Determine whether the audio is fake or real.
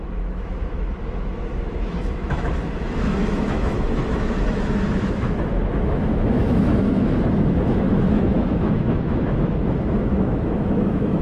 fake